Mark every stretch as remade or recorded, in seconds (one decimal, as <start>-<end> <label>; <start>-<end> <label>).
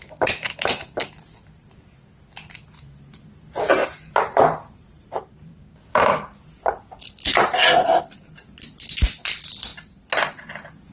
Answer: 0.0-3.8 recorded; 3.8-5.6 remade; 5.6-10.9 recorded